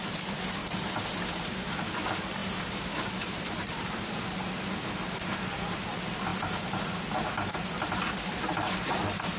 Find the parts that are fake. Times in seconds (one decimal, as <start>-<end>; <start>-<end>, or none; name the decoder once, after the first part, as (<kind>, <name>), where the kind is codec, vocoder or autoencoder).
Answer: 0.6-1.7 (vocoder, BigVGAN v2); 2.4-4.5; 6.3-6.9